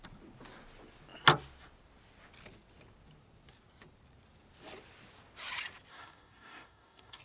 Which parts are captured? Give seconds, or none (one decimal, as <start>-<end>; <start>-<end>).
0.0-5.9